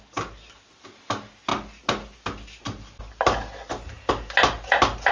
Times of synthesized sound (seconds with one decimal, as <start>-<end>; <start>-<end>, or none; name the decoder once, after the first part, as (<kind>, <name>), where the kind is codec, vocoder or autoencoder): none

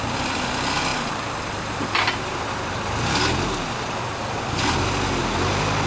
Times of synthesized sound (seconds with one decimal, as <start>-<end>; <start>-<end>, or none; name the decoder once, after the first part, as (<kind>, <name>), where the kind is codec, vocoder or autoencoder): none

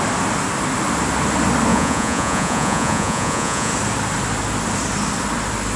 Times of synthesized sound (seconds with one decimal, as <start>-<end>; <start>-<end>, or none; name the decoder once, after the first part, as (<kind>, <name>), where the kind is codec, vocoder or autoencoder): 1.7-3.7 (vocoder, Vocos)

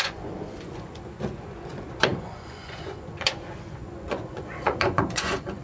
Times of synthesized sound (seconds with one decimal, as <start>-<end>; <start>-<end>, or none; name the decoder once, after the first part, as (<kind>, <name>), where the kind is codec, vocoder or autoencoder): 0.0-5.6 (vocoder, Vocos)

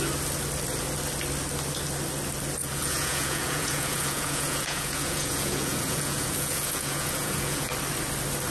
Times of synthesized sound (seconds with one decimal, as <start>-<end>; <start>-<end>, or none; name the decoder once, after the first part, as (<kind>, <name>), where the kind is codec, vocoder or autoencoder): 2.6-7.7 (vocoder, Vocos)

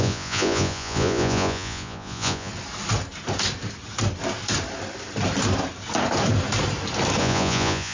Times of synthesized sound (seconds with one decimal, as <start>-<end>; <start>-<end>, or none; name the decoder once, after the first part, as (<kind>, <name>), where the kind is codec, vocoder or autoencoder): 0.0-2.5 (vocoder, Vocos); 7.2-7.9

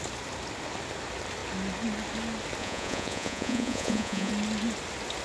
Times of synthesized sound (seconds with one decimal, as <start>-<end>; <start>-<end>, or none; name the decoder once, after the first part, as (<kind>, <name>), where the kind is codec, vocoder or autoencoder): 2.6-4.3 (vocoder, Vocos)

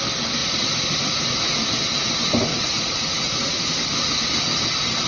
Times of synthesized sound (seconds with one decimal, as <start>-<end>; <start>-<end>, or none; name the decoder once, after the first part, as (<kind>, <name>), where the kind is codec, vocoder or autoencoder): 0.4-1.8 (vocoder, Vocos); 2.5-3.6